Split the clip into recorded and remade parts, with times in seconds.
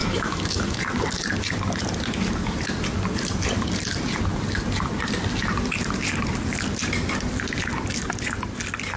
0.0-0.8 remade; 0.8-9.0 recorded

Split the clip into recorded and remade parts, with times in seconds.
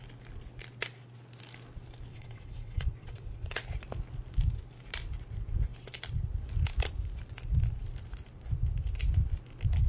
0.0-2.1 recorded; 2.1-3.6 remade; 3.6-9.9 recorded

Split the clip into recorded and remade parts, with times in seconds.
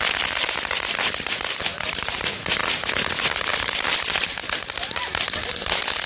0.0-6.1 recorded